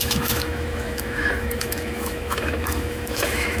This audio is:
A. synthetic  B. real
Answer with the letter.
A